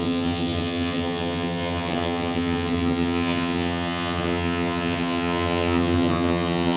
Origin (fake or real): fake